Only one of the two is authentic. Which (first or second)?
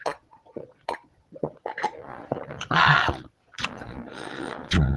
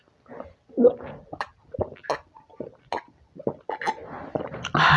second